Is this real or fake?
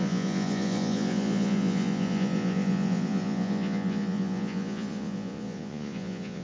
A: fake